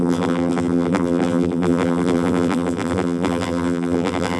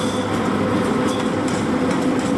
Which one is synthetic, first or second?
first